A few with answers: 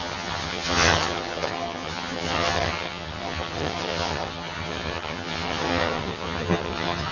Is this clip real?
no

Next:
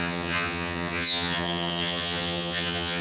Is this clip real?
no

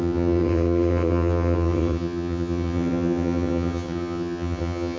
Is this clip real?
no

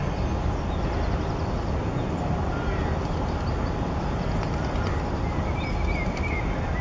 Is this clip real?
yes